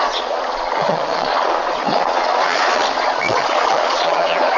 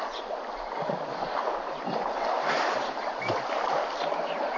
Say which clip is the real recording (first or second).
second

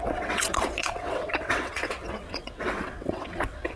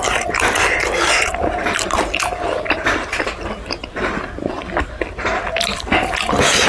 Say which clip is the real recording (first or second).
second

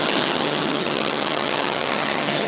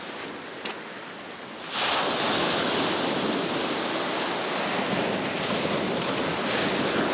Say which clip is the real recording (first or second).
second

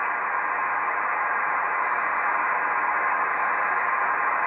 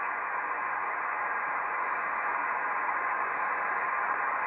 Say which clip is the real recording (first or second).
first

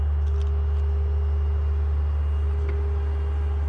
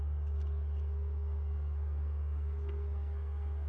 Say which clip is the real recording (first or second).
first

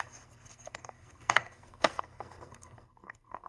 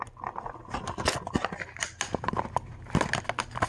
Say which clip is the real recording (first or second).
second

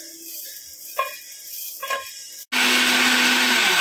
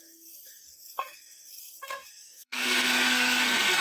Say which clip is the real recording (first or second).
first